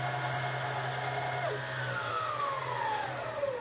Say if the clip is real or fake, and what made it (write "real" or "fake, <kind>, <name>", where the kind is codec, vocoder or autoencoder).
real